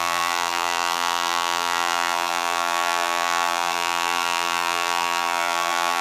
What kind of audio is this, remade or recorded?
remade